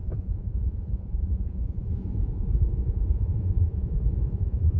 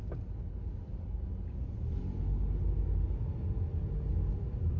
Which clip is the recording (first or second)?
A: second